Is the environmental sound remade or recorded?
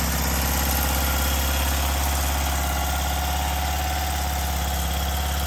recorded